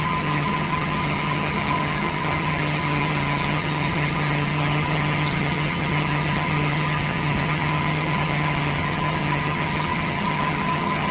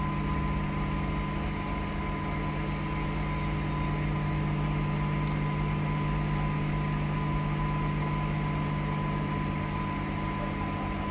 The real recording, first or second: second